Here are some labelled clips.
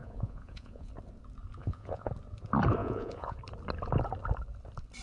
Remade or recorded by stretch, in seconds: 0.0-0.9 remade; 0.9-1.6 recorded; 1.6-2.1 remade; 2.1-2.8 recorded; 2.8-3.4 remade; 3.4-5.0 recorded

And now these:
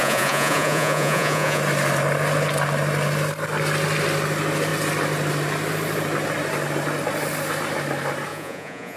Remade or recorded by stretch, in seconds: 0.0-1.6 remade; 1.6-8.3 recorded; 8.3-9.0 remade

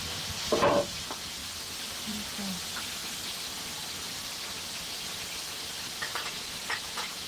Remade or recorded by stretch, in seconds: 0.0-6.1 recorded; 6.1-7.3 remade